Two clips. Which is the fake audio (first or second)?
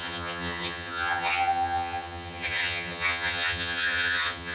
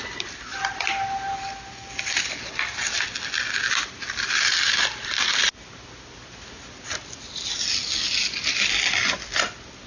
first